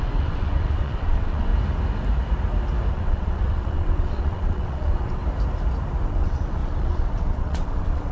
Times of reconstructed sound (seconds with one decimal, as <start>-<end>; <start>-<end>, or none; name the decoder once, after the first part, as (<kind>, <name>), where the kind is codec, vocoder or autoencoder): 0.0-1.5 (vocoder, WaveNeXt); 2.9-5.2; 6.0-8.1